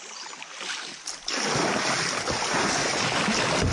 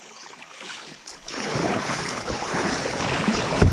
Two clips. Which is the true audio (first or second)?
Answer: first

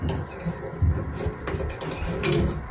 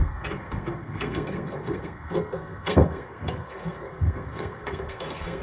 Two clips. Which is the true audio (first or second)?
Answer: first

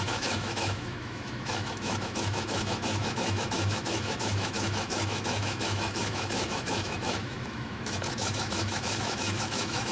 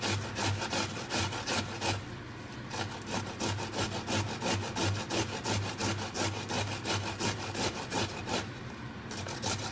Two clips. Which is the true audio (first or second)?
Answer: second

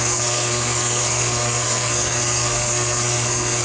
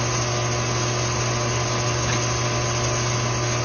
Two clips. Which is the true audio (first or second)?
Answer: second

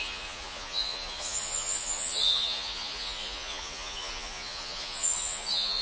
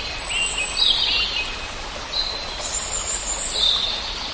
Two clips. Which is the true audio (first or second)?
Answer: second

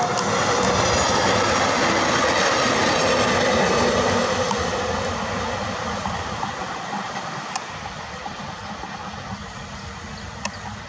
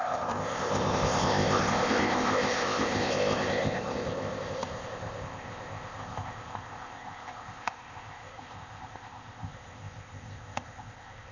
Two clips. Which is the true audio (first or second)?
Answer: first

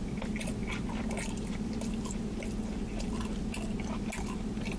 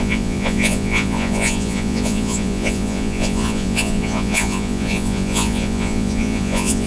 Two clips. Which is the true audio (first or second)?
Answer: first